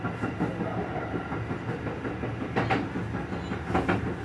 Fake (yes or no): no